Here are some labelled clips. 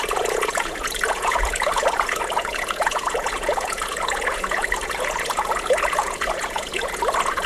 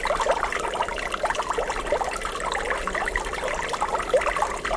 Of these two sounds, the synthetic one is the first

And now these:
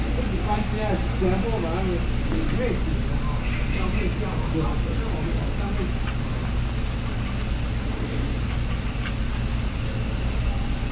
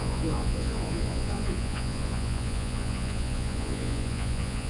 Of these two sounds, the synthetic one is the second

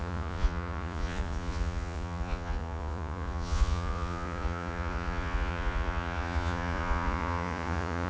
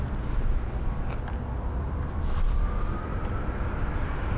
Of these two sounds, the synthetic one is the first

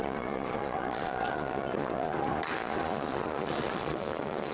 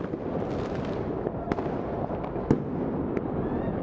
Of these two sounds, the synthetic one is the first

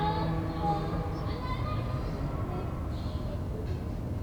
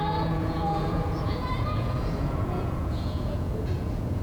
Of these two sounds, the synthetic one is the second